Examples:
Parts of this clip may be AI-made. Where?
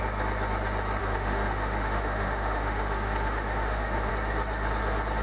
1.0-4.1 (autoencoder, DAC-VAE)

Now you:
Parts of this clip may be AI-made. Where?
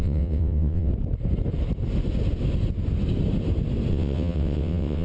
0.0-0.9 (vocoder, WaveNeXt); 3.9-5.0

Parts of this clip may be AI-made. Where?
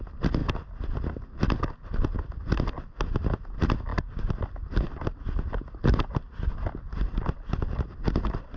none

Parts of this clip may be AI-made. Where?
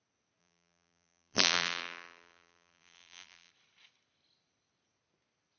0.4-3.5 (vocoder, BigVGAN v2)